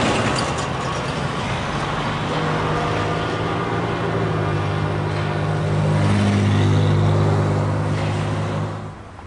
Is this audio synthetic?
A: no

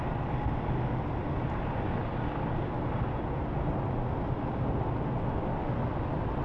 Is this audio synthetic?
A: no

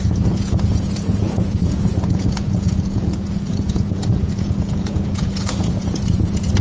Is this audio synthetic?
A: yes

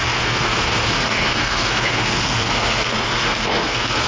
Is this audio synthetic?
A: yes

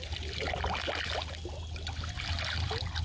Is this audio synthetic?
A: no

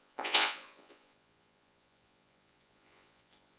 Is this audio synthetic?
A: yes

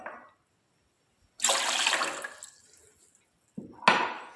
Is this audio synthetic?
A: no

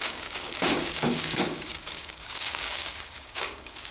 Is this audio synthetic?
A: yes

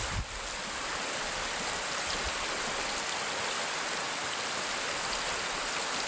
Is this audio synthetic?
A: no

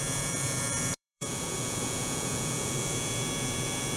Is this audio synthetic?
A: yes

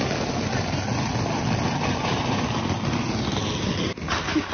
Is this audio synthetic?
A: no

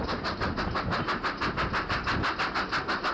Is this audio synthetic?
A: no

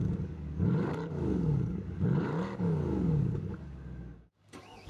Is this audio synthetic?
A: yes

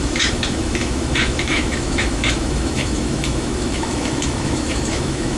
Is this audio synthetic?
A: yes